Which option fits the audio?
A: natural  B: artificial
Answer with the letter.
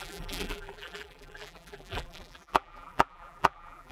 B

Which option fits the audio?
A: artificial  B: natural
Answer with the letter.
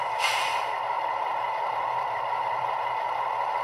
A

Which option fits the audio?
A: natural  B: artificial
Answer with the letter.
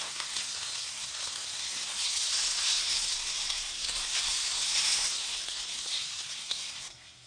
B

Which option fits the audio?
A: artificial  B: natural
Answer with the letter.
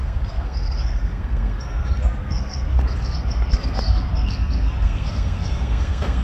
A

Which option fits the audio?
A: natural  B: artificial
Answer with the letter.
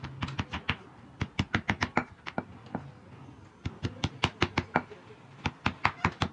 A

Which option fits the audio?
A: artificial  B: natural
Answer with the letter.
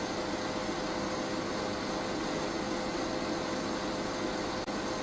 B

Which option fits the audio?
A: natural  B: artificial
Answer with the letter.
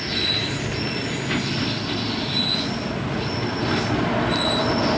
A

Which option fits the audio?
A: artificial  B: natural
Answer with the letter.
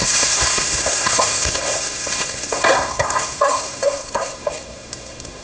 A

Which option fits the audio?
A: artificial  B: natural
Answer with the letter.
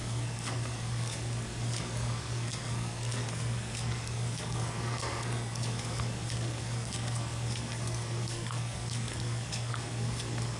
A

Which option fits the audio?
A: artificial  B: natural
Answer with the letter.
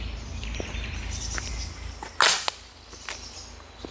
B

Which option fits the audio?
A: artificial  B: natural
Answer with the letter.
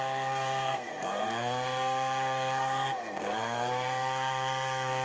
A